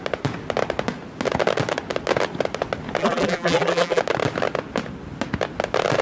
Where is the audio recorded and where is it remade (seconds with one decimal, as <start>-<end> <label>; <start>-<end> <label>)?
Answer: 0.0-3.0 recorded; 3.0-4.0 remade; 4.0-6.0 recorded